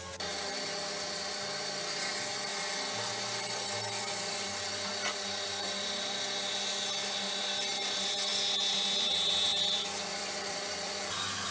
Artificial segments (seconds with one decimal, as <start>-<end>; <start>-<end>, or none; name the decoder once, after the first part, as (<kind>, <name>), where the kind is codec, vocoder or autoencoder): 9.5-10.9 (vocoder, BigVGAN v2)